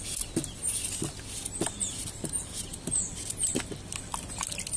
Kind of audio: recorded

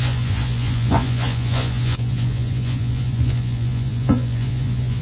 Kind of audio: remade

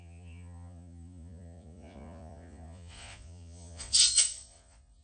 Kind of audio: remade